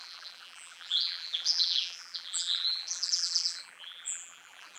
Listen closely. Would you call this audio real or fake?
fake